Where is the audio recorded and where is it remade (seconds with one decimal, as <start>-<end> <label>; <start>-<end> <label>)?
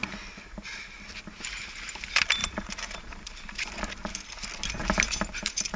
0.0-2.4 recorded; 2.4-3.2 remade; 3.2-4.8 recorded; 4.8-5.8 remade